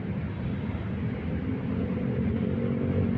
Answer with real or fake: real